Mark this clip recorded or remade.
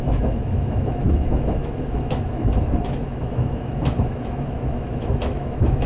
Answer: remade